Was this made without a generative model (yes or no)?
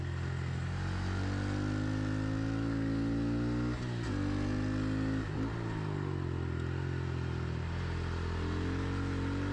yes